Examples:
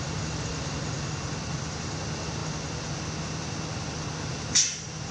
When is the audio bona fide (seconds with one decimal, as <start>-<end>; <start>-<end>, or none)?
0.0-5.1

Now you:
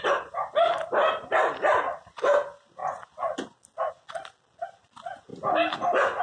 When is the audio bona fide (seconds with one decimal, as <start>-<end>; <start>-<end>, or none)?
0.0-6.2

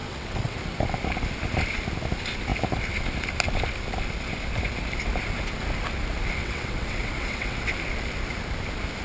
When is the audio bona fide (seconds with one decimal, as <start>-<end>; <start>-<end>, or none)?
0.6-6.4; 7.7-9.0

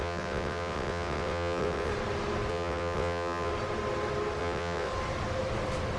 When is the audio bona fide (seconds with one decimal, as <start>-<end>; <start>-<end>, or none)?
1.9-2.5; 3.5-4.4; 4.9-6.0

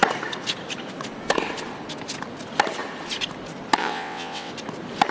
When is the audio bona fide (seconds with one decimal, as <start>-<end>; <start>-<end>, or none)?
0.0-3.8; 4.5-5.1

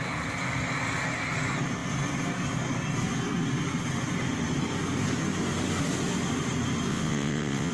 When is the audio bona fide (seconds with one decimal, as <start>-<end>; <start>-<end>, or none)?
0.0-6.9